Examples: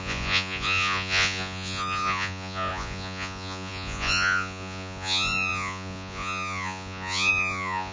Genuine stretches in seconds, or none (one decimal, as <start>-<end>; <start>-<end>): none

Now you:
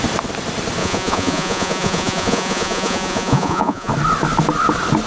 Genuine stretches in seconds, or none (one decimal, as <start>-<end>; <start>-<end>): 0.0-0.8; 3.9-5.1

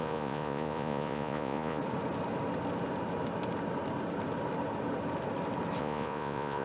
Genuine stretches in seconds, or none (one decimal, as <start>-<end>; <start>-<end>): 1.8-5.8

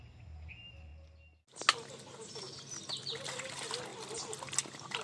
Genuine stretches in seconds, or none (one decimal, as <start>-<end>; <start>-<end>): 0.0-5.0